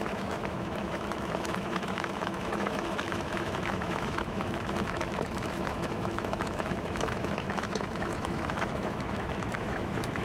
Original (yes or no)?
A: no